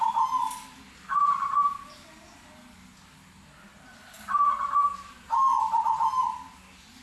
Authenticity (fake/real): real